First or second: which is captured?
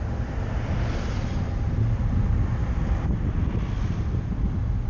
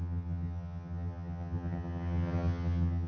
first